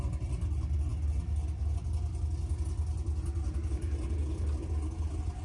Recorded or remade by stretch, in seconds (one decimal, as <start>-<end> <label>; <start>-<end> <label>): 0.0-5.4 recorded